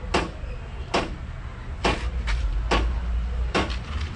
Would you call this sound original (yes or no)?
yes